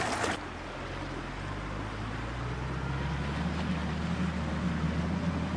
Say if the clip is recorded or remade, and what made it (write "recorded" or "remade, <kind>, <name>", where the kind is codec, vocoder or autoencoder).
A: recorded